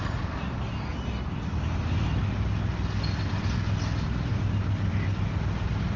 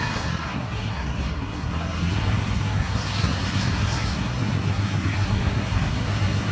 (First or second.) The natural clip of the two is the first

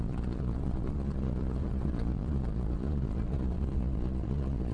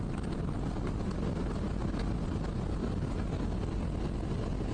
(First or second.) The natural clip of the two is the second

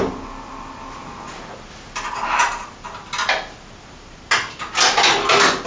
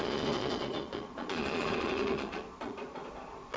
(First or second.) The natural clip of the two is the first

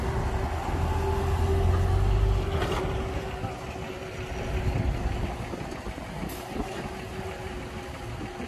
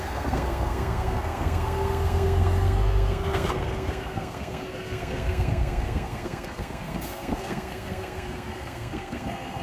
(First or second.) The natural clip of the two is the first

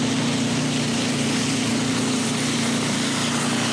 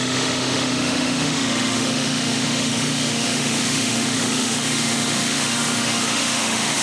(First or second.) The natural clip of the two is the first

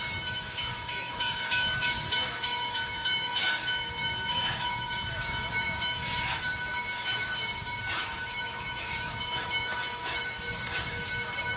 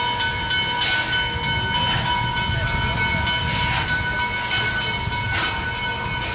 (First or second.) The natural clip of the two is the second